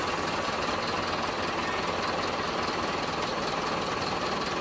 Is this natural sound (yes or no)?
yes